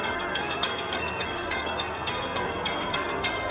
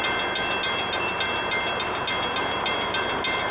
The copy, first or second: first